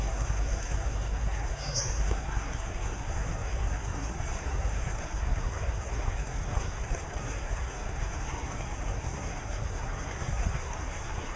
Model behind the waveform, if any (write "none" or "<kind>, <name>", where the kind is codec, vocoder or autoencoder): codec, SNAC